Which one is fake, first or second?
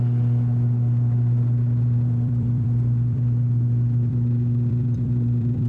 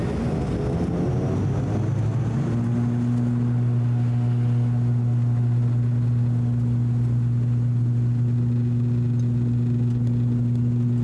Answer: first